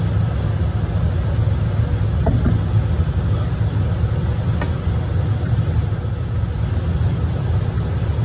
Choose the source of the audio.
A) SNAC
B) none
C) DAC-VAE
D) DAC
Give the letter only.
B